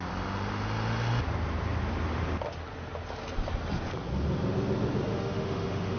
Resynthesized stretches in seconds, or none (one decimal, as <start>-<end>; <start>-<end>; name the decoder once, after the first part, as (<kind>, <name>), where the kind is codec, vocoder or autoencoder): 5.1-6.0 (autoencoder, DAC-VAE)